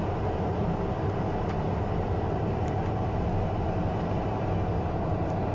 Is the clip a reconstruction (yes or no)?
no